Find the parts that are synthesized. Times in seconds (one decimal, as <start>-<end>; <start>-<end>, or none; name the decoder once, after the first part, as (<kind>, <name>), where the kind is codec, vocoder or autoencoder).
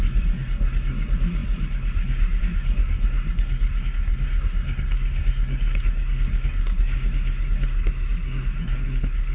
0.0-9.3 (codec, SNAC)